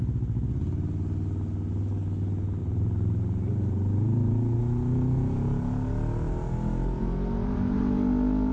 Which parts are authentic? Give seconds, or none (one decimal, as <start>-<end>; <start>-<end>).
0.0-2.6; 4.6-6.8; 7.8-8.5